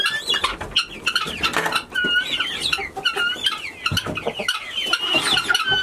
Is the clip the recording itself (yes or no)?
yes